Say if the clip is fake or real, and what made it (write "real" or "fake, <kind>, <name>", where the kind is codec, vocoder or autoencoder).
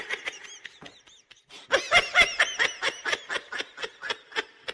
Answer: real